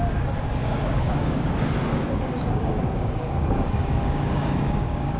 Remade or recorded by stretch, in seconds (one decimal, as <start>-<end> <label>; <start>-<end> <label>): 0.0-0.6 recorded; 0.6-1.5 remade; 1.5-1.9 recorded; 1.9-5.2 remade